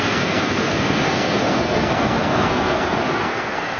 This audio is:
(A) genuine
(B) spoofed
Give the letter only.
B